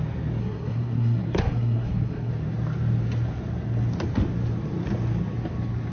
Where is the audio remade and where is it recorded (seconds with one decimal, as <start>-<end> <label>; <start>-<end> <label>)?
0.0-0.4 recorded; 0.4-2.3 remade; 2.3-5.9 recorded